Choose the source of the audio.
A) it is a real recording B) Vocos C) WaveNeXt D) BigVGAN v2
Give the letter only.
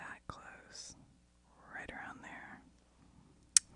A